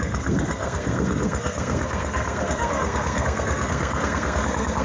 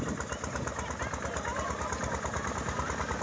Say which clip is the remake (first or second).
first